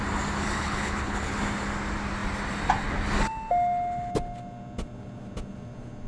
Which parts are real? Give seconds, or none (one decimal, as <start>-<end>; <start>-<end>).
0.0-0.6; 1.4-6.1